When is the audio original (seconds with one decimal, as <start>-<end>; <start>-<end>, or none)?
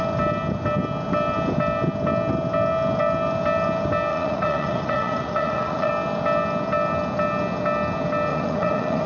0.0-4.1; 5.9-8.3